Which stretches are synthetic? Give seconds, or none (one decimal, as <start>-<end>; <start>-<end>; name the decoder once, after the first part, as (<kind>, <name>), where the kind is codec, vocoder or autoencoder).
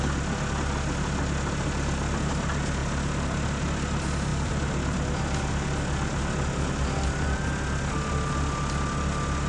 none